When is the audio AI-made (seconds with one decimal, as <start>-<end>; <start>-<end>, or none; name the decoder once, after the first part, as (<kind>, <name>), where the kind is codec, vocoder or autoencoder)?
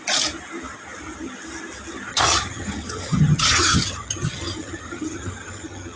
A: 2.1-6.0 (vocoder, HiFi-GAN)